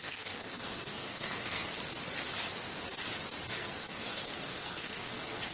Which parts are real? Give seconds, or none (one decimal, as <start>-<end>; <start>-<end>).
1.7-3.5